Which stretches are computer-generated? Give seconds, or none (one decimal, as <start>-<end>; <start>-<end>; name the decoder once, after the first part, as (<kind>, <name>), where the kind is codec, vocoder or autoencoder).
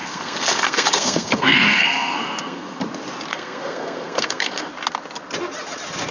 0.0-2.8 (codec, SNAC); 3.3-4.7